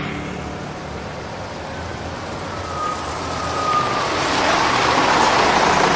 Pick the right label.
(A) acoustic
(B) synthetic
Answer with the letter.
A